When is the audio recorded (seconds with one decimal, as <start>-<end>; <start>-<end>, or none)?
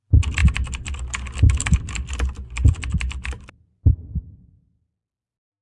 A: 0.0-5.6